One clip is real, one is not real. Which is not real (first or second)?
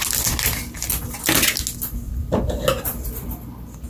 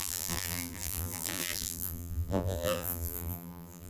second